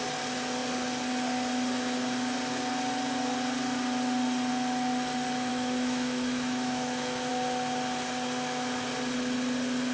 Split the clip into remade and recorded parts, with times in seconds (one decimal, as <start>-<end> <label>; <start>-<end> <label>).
0.0-5.5 recorded; 5.5-7.3 remade; 7.3-9.9 recorded